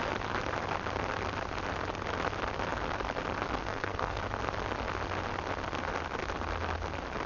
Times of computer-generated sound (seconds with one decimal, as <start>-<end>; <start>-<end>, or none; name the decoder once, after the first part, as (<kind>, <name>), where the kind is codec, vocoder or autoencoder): 3.6-4.2 (codec, SNAC)

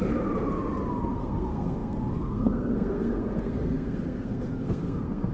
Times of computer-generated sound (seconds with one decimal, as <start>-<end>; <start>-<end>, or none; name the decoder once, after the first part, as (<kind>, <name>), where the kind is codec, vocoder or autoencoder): 1.1-5.3 (codec, SNAC)